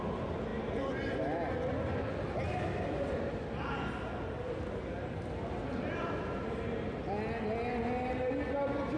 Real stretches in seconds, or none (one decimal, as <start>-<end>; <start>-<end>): 0.0-9.0